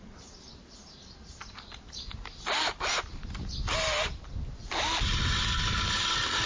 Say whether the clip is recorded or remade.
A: recorded